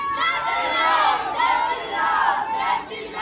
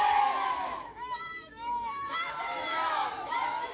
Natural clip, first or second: first